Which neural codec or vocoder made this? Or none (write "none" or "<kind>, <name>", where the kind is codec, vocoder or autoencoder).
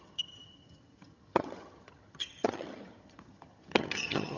vocoder, HiFi-GAN